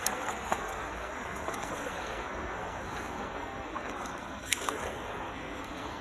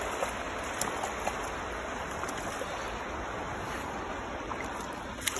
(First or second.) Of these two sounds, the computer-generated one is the first